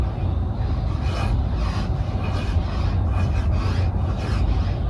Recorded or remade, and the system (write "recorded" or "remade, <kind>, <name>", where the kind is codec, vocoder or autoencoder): recorded